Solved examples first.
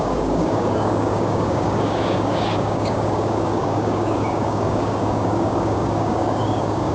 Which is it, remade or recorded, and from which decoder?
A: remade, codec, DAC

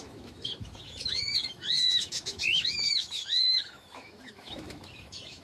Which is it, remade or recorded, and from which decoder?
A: remade, autoencoder, DAC-VAE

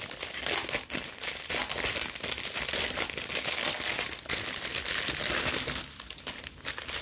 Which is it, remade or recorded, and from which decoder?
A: recorded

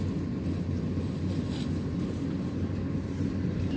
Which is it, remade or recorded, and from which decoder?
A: recorded